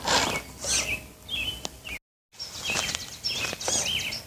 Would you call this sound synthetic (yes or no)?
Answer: no